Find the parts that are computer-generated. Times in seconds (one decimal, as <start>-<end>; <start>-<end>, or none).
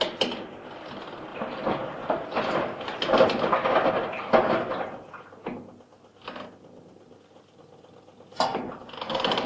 1.3-3.9; 8.5-9.1